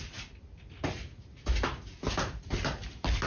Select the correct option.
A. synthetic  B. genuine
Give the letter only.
B